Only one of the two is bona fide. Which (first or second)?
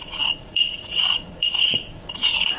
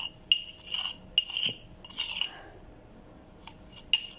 second